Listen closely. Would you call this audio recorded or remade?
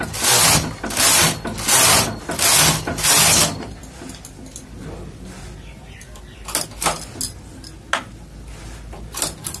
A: recorded